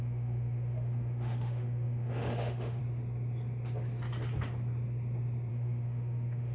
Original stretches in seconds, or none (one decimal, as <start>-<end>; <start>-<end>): 2.8-5.5